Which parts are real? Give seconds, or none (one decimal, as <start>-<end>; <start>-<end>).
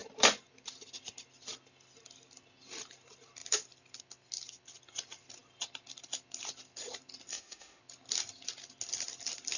0.0-7.3; 7.8-9.6